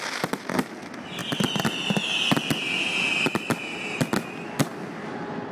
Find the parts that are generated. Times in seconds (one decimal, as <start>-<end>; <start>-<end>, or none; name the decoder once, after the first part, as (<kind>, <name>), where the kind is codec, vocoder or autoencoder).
none